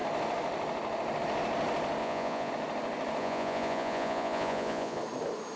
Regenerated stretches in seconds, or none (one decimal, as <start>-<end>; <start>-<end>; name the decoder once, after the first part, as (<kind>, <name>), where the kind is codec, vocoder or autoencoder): 2.0-2.5 (vocoder, Vocos); 3.2-5.0